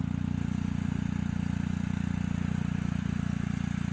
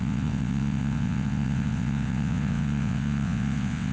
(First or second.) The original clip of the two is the first